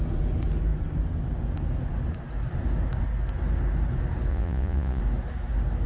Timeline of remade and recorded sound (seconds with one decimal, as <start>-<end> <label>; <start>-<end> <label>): 0.0-4.3 recorded; 4.3-5.0 remade; 5.0-5.9 recorded